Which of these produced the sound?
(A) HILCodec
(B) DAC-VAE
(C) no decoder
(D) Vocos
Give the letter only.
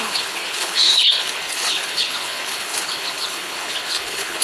A